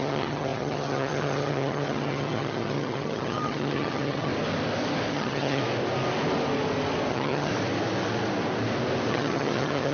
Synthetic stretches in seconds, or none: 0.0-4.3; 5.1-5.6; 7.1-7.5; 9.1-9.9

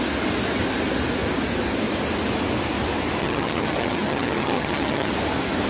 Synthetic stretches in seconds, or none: 3.2-5.1

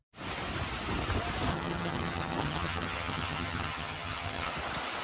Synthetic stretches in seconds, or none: 1.5-4.5